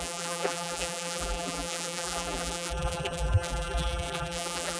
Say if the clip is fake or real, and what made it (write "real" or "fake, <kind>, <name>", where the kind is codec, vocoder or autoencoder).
fake, vocoder, BigVGAN v2